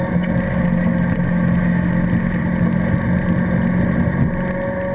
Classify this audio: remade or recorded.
recorded